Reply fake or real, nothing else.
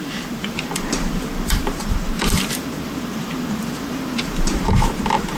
fake